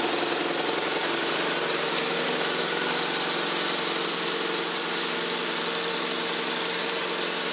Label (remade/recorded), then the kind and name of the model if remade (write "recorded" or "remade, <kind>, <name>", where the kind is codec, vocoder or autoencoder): recorded